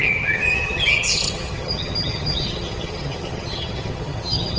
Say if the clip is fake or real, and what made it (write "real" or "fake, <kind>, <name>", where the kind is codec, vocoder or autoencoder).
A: fake, vocoder, HiFi-GAN